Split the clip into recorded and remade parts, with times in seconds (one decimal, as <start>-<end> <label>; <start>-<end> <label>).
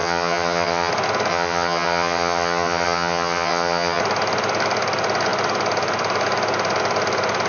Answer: 0.0-0.9 remade; 0.9-1.3 recorded; 1.3-4.0 remade; 4.0-7.5 recorded